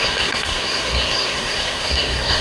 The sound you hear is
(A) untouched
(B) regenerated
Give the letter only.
B